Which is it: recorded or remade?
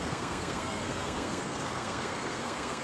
remade